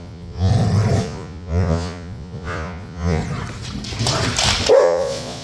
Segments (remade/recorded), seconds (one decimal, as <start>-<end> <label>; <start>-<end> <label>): 0.0-0.5 remade; 0.5-1.0 recorded; 1.0-3.2 remade; 3.2-4.8 recorded; 4.8-5.4 remade